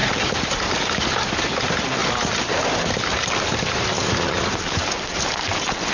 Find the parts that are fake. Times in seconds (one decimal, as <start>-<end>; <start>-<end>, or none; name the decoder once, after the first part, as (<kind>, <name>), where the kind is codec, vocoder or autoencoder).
0.0-1.4 (vocoder, BigVGAN v2); 2.0-3.8